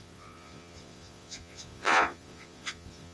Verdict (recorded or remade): remade